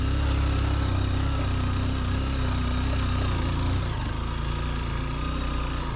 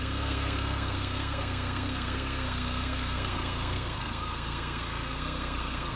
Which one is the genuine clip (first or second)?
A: first